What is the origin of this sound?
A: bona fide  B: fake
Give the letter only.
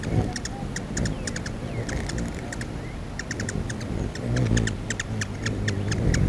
A